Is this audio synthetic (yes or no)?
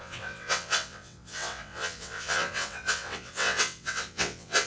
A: yes